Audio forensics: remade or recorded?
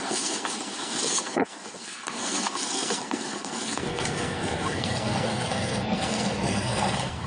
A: remade